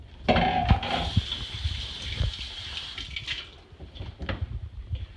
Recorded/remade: recorded